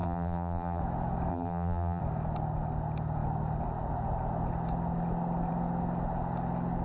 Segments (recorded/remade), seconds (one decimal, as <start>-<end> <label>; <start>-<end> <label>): 0.0-0.8 remade; 0.8-1.3 recorded; 1.3-2.0 remade; 2.0-6.8 recorded